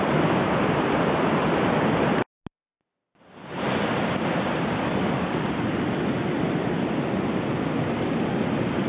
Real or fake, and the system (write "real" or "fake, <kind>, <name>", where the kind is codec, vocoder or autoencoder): real